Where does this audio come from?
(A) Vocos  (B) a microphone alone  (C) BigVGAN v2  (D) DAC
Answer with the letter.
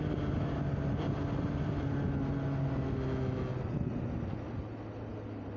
B